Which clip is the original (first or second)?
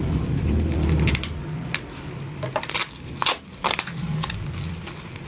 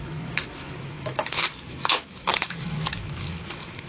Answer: first